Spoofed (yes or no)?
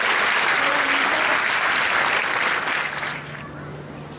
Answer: no